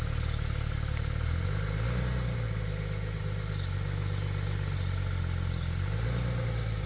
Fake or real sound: real